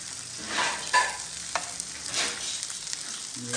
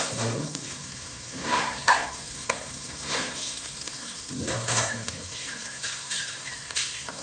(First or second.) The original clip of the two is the first